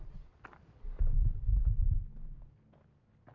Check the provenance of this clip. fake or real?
real